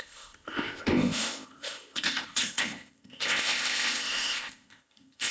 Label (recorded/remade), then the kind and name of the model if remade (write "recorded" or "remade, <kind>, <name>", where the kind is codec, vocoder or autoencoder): remade, codec, ZipCodec